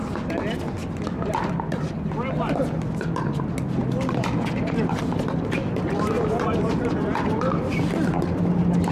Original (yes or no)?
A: yes